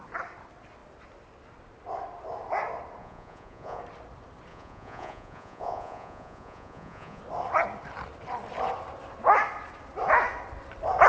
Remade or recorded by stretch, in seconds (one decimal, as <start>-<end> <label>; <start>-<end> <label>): 0.0-3.0 recorded; 3.0-3.8 remade; 3.8-4.5 recorded; 4.5-7.2 remade; 7.2-11.1 recorded